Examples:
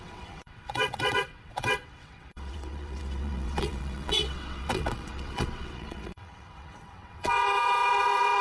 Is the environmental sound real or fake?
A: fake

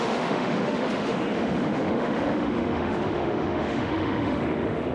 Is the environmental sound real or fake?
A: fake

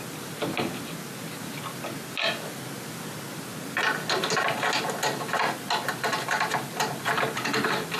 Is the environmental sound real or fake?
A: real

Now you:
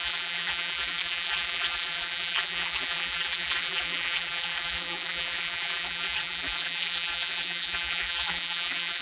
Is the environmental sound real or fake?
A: fake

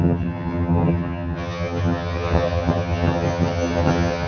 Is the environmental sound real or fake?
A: fake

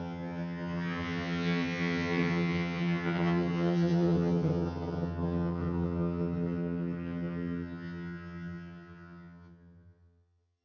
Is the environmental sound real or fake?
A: fake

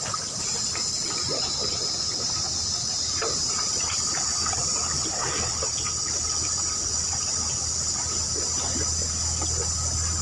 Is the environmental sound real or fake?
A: real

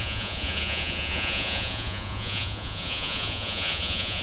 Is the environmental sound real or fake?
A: fake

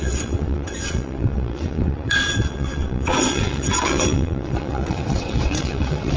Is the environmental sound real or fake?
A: fake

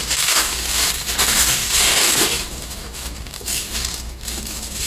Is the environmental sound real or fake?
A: fake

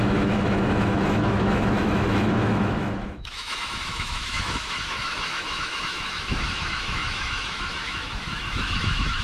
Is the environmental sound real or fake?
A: fake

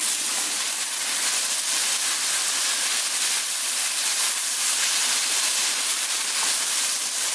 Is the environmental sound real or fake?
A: real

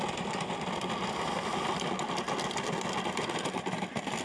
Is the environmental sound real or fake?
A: real